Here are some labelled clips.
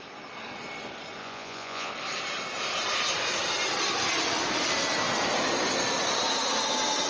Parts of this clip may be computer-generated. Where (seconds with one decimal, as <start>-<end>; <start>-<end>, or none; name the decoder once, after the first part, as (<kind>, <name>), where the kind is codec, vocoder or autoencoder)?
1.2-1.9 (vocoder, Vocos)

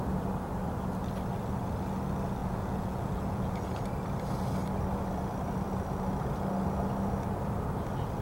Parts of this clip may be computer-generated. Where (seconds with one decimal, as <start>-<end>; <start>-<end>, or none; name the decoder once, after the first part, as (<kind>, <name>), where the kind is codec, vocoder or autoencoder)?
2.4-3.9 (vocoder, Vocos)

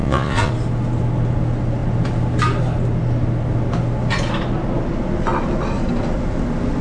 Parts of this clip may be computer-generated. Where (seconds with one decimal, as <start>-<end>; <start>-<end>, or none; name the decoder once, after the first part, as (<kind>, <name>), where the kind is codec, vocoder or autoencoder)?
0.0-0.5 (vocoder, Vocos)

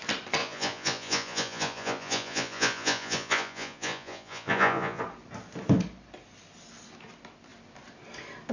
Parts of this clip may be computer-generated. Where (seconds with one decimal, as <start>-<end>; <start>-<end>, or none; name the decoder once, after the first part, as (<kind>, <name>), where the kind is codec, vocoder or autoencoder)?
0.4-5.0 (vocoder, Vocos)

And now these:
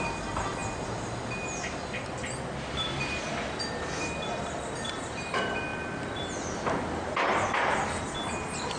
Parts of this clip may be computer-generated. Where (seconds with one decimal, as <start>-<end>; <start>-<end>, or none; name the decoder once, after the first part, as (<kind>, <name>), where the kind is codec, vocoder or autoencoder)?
none

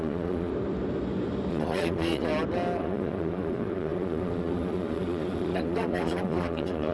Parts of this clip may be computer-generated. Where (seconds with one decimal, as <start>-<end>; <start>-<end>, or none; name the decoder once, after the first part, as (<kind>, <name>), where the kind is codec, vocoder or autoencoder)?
0.0-0.5 (vocoder, Vocos); 1.5-2.3; 2.8-6.9

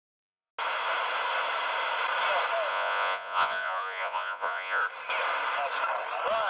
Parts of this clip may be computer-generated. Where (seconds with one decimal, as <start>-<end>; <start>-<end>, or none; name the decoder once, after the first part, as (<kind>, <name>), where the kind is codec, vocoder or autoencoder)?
0.0-0.5 (vocoder, Vocos); 2.7-4.8

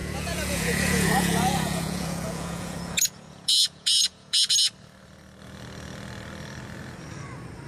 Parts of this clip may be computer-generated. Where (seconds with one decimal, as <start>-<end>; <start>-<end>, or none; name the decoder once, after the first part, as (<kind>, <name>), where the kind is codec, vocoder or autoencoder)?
0.0-4.5 (vocoder, Vocos)